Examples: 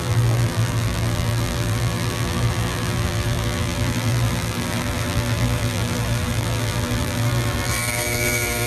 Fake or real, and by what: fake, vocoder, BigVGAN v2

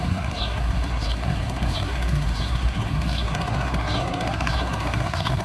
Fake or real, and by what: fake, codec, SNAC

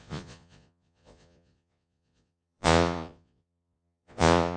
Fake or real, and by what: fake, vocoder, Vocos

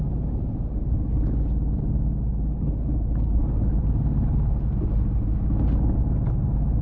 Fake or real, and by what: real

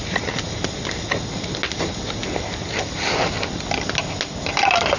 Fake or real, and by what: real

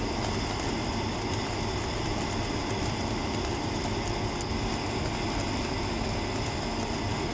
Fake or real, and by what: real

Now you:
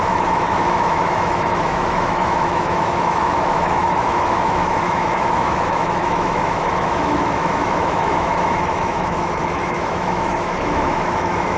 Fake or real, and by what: fake, autoencoder, DAC-VAE